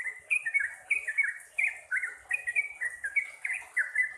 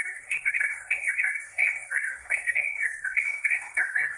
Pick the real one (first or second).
first